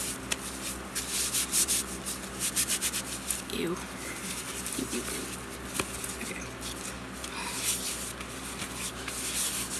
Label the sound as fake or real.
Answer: real